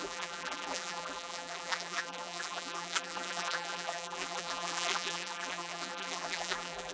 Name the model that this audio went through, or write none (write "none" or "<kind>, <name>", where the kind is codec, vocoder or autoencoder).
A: vocoder, BigVGAN v2